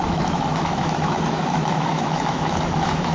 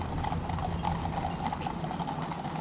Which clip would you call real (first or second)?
second